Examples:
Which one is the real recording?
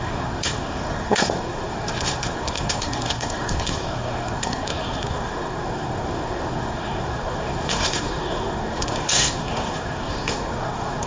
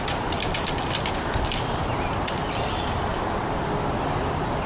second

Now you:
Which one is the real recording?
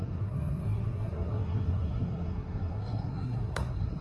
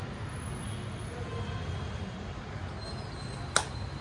second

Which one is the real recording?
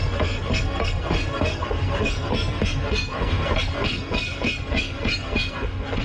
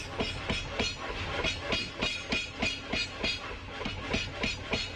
second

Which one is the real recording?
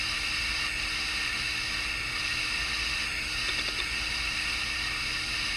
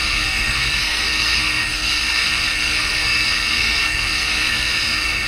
first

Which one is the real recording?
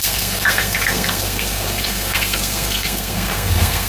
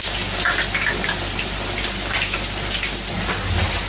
second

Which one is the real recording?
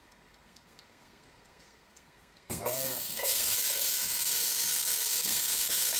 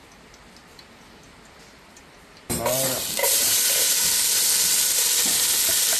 second